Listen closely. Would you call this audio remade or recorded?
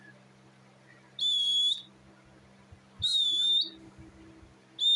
recorded